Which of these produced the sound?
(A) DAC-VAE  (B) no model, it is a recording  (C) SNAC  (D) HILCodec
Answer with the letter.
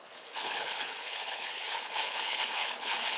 D